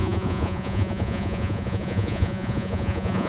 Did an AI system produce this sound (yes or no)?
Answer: yes